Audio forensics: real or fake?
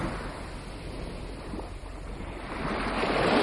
real